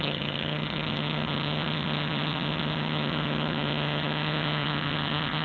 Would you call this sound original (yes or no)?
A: no